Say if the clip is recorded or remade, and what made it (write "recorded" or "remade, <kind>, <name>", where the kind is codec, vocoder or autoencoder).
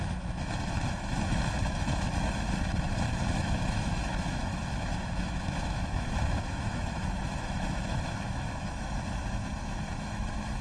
remade, autoencoder, DAC-VAE